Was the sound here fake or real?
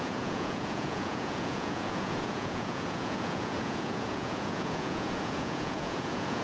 fake